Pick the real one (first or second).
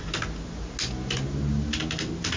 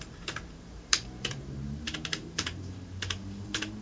first